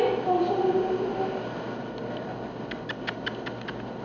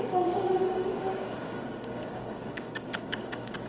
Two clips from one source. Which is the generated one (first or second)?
second